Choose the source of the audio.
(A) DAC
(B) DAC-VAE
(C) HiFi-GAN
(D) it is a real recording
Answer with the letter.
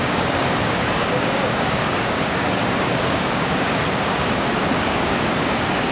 A